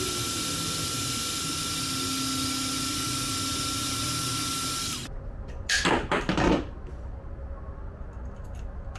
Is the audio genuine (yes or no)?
yes